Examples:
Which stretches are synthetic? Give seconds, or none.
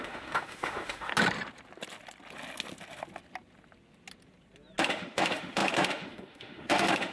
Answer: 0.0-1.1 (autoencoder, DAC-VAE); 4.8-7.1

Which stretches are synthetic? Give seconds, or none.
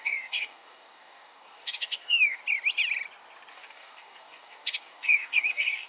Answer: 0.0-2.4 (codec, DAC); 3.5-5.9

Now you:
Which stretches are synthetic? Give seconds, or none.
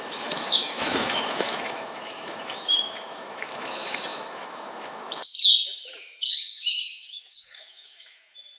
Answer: 0.0-8.6 (autoencoder, DAC-VAE)